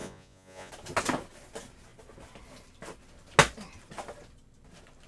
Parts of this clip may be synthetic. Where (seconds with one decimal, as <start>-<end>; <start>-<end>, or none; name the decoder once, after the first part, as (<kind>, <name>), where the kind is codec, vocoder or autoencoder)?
0.0-0.7 (vocoder, Vocos)